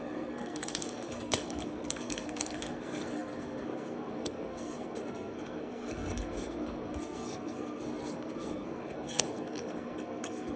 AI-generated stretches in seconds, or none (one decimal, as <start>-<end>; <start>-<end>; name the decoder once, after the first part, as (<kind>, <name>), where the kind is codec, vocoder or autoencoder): 0.0-10.6 (codec, SNAC)